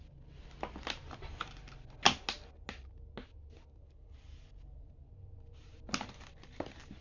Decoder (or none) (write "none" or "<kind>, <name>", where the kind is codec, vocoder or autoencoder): none